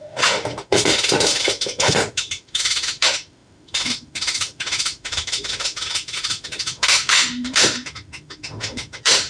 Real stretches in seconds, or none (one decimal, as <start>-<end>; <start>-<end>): none

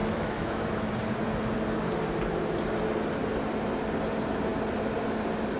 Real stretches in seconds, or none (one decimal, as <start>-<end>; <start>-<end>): 0.9-5.6

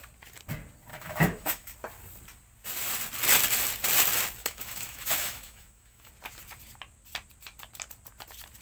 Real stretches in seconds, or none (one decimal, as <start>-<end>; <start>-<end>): 0.0-0.9; 1.7-4.4; 6.1-8.6